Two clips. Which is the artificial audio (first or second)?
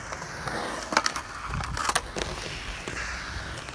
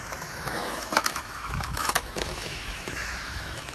second